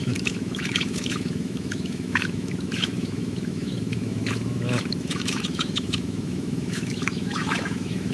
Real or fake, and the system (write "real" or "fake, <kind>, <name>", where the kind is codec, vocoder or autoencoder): fake, autoencoder, DAC-VAE